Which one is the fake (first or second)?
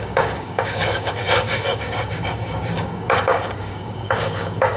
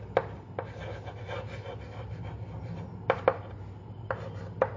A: first